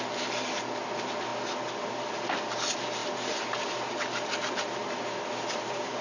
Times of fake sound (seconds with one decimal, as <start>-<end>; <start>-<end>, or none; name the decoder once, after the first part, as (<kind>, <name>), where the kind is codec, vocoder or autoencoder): 4.8-6.0 (vocoder, BigVGAN v2)